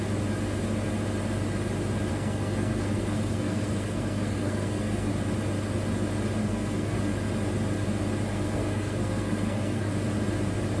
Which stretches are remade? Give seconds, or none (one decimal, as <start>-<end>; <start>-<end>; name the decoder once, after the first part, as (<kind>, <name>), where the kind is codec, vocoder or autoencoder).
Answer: 2.1-5.1 (codec, SNAC); 6.4-7.0; 8.3-9.9